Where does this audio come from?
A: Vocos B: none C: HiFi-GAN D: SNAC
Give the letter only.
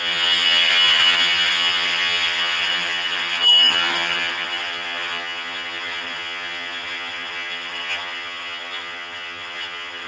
C